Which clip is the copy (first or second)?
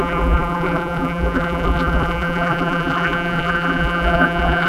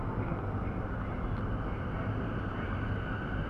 first